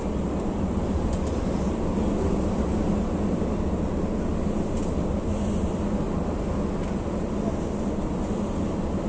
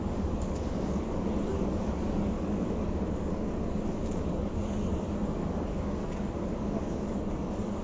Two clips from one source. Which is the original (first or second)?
first